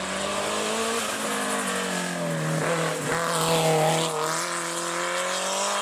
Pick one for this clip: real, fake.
real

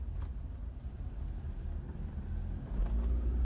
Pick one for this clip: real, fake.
real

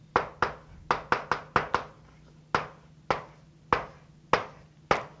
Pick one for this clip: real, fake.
real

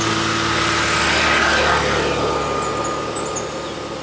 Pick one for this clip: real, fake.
real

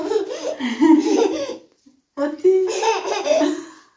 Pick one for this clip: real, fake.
real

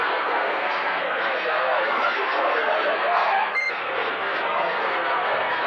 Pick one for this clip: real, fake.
fake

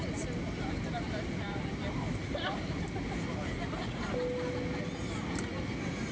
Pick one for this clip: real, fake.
real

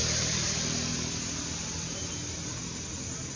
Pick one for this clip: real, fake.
real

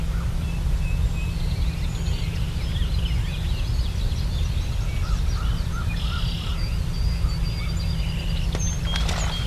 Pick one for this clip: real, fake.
real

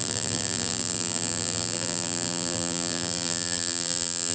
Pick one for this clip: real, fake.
fake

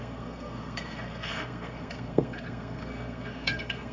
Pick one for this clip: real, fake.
fake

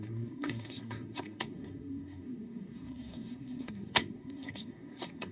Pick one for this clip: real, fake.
fake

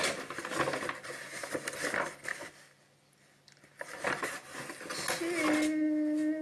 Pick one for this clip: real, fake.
real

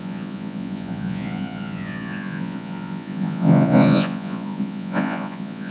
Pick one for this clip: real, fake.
fake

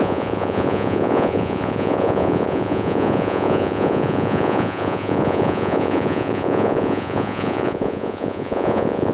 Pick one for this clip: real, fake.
fake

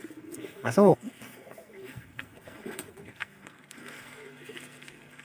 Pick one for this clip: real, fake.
fake